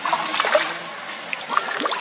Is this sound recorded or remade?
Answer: recorded